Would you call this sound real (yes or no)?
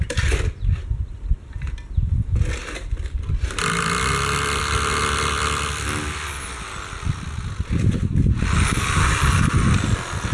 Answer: yes